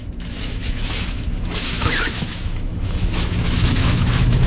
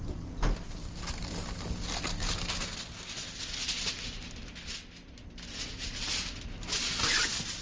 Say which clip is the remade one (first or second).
first